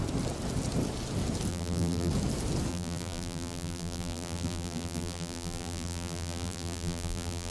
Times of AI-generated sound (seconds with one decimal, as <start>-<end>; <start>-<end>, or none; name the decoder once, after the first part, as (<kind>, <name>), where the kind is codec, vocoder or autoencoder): 1.5-2.1 (vocoder, BigVGAN v2); 2.7-7.5